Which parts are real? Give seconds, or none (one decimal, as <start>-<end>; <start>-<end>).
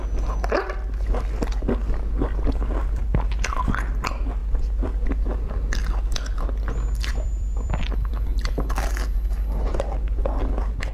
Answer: 0.0-4.4; 5.5-7.1; 8.1-10.9